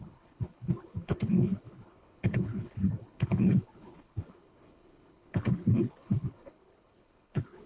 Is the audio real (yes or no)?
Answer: no